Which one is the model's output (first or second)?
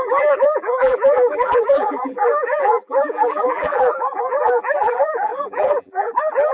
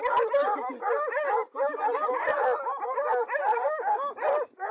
first